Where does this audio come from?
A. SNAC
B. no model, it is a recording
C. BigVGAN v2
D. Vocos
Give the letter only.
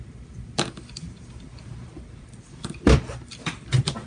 C